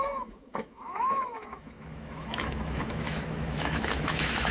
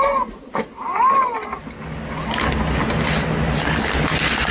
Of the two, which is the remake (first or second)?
first